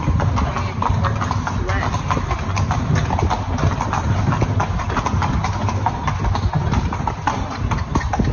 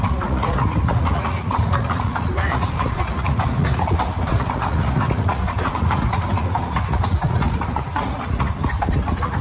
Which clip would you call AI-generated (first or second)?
second